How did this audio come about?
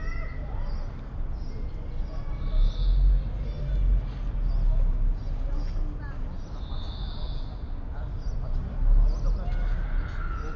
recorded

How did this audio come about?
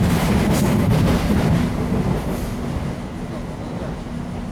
recorded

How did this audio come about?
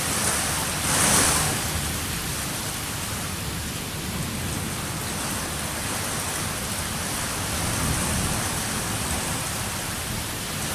recorded